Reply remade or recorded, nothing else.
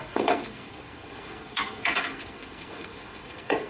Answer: remade